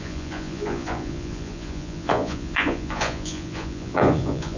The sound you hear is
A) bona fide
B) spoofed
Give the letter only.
B